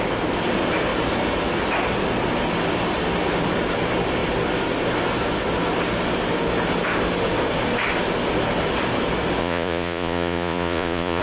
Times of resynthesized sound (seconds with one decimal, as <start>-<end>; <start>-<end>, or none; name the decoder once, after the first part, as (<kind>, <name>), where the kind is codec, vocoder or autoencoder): 9.4-11.2 (vocoder, Vocos)

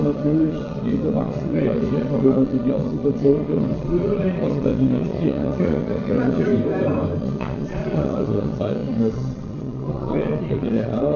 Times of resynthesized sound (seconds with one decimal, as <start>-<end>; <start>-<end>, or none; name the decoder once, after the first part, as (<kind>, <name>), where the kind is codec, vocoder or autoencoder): 0.0-6.5 (vocoder, Vocos); 7.2-11.2

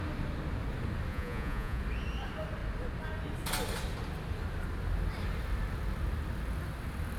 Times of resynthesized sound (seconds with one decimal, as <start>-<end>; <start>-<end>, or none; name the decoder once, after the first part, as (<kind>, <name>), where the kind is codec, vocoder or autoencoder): 1.1-1.8 (vocoder, Vocos)

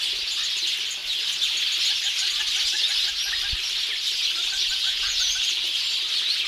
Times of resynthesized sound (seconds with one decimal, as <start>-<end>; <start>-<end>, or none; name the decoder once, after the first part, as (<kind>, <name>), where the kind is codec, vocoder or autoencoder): 4.7-5.3 (vocoder, Vocos)

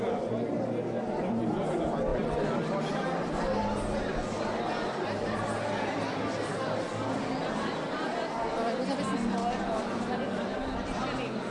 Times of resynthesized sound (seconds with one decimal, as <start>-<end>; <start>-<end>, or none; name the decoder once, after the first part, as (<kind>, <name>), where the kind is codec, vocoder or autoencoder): none

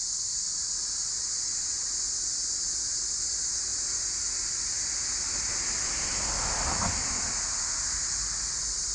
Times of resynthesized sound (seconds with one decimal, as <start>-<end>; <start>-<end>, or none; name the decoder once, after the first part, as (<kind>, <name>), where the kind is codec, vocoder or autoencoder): none

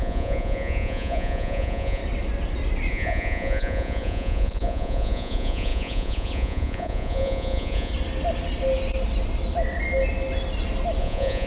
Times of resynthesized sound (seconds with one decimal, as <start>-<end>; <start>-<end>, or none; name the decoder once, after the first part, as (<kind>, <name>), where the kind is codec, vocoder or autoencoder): 0.0-2.0 (vocoder, Vocos); 2.9-7.9; 11.0-11.5